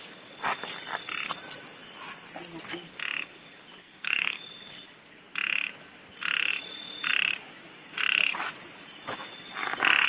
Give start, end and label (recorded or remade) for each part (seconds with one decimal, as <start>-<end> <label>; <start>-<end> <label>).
0.0-3.8 recorded; 3.8-4.4 remade; 4.4-10.1 recorded